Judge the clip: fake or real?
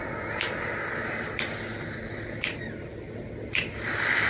real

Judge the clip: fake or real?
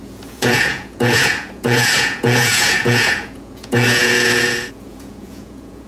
fake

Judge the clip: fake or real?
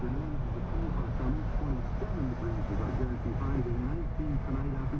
real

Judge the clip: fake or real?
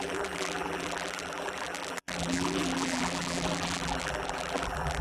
fake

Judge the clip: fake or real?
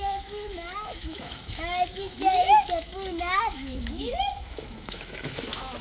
fake